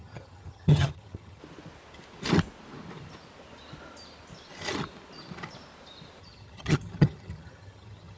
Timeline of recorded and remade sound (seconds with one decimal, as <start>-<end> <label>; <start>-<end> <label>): 0.0-1.4 remade; 1.4-6.2 recorded; 6.2-8.2 remade